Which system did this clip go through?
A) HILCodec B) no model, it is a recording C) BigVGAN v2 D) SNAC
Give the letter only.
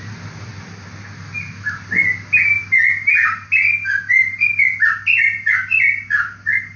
B